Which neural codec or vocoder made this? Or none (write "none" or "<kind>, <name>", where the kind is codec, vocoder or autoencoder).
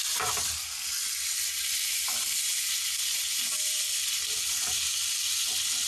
none